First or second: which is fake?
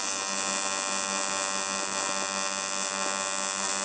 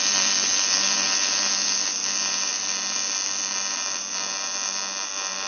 second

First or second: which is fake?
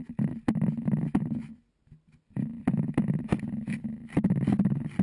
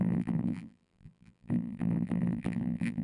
second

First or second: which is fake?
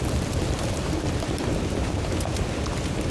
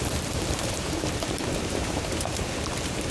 second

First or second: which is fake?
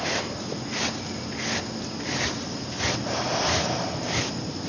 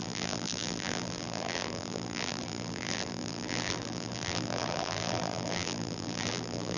second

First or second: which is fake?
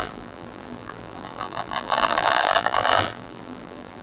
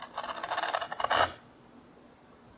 first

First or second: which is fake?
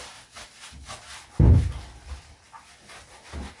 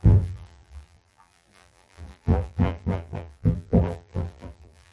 second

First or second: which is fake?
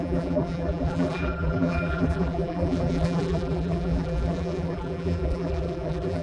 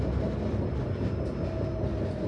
first